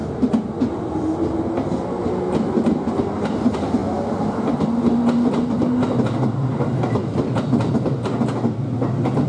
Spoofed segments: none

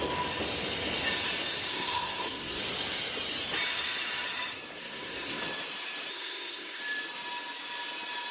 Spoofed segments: 1.7-2.6 (codec, SNAC); 4.8-5.4; 6.1-6.8

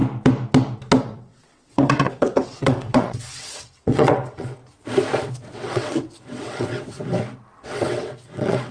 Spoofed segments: 1.0-4.6 (vocoder, WaveNeXt); 5.2-7.0; 7.6-8.7

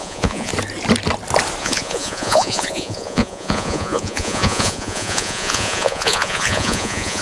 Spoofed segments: 0.0-0.5 (vocoder, Vocos); 1.6-7.2